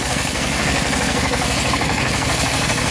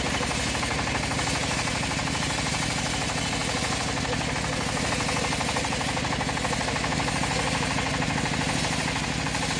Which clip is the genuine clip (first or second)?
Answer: second